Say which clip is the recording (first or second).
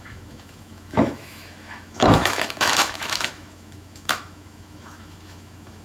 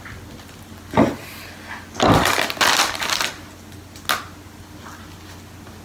second